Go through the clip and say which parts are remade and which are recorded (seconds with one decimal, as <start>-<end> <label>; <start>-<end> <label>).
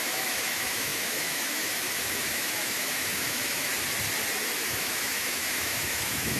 0.0-3.7 remade; 3.7-4.6 recorded; 4.6-6.4 remade